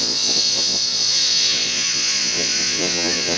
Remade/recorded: remade